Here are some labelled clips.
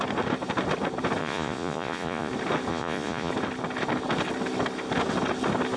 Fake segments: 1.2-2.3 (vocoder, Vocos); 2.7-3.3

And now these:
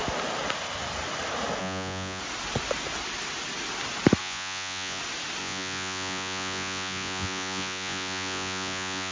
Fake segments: 1.6-2.2 (vocoder, Vocos); 4.2-5.0; 5.4-9.1